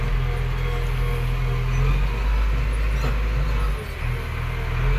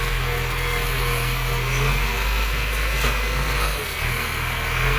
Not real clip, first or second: second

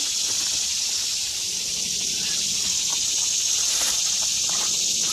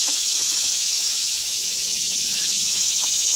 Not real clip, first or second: second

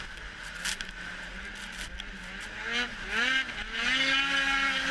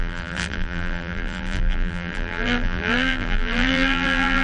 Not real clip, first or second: second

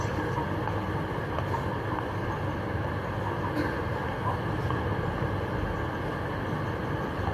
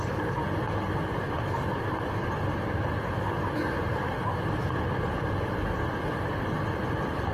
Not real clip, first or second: second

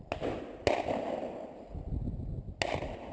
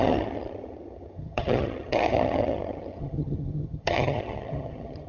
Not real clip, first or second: second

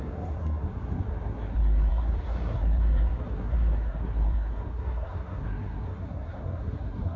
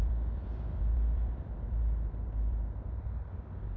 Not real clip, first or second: first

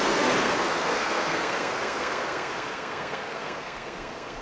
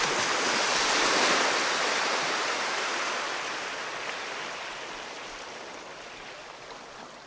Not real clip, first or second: first